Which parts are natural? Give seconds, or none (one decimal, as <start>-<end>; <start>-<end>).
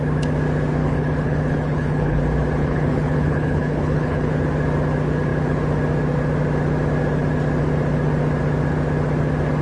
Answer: 0.0-0.8; 2.2-2.6; 4.3-9.6